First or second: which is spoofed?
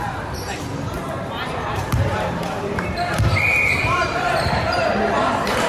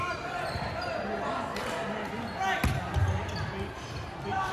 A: first